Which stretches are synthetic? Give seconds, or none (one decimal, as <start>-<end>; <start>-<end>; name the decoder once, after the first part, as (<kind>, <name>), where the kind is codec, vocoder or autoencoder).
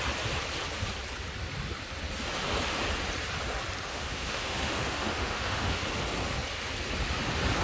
3.9-5.8 (autoencoder, DAC-VAE)